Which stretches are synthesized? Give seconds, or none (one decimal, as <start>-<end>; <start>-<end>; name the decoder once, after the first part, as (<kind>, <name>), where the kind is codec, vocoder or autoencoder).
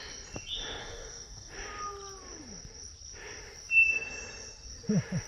0.8-1.5 (codec, DAC)